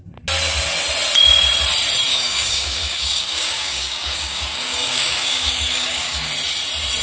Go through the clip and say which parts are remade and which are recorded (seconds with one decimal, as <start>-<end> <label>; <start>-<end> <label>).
0.0-2.1 recorded; 2.1-6.3 remade; 6.3-7.0 recorded